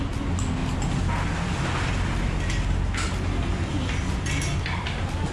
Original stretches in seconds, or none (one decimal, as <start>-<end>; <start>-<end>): 0.0-5.3